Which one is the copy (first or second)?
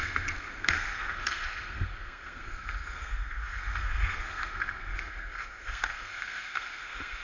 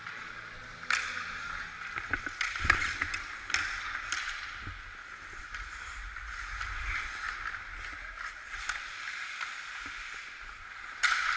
first